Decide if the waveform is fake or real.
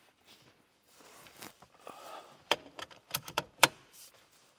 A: fake